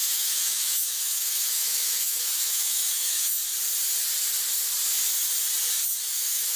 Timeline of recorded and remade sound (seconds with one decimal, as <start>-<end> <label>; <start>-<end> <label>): 0.0-3.4 remade; 3.4-6.0 recorded; 6.0-6.6 remade